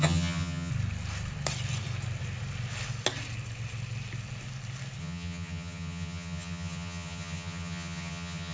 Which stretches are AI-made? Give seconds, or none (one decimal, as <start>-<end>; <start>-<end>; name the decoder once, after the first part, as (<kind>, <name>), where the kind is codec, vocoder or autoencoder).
0.0-0.7 (vocoder, HiFi-GAN); 5.0-8.5